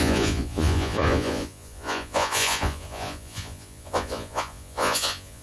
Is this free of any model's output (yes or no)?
no